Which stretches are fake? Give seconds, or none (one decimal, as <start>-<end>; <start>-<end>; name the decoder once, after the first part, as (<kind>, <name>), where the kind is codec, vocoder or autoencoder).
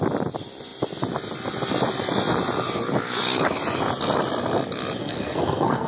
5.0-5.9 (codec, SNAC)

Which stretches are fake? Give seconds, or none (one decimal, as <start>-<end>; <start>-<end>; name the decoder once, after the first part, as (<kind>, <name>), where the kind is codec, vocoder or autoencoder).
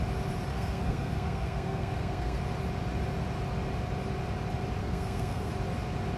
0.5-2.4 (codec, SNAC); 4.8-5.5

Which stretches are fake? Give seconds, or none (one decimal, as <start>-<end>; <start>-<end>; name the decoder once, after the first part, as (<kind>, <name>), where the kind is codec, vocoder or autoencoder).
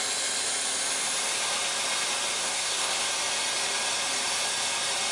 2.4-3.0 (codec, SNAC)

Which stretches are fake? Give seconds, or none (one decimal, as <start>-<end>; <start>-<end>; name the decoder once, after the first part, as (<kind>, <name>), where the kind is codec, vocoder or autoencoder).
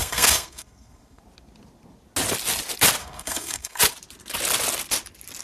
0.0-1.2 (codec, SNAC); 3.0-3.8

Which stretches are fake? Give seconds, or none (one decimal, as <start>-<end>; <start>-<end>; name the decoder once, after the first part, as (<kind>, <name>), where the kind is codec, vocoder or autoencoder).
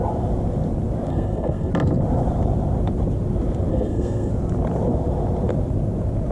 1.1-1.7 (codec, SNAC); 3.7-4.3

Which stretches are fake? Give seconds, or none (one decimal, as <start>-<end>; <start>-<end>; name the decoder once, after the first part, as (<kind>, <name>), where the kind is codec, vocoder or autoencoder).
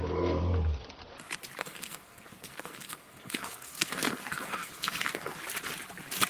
1.6-5.4 (codec, SNAC)